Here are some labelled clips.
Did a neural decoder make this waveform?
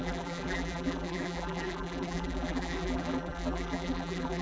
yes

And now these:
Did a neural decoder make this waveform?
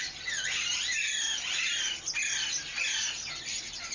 no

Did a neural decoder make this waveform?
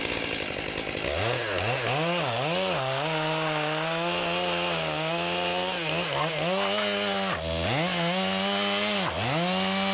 no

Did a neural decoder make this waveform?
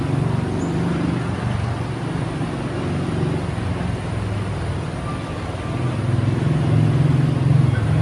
no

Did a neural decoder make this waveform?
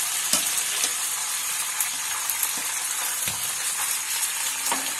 yes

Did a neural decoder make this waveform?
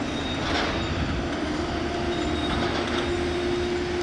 no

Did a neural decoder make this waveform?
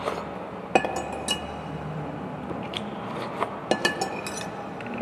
no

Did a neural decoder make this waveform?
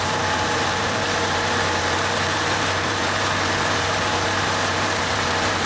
yes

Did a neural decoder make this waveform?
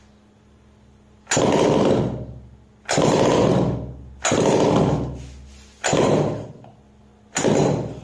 no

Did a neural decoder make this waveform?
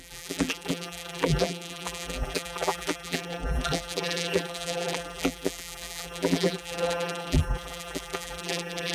yes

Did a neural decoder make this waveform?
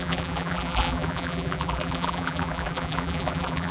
yes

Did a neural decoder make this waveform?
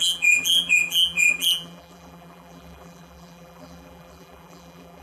yes